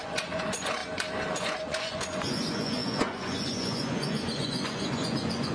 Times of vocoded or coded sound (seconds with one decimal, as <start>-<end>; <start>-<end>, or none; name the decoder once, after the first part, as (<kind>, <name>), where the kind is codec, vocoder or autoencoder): 0.0-0.8 (vocoder, Vocos); 1.4-5.5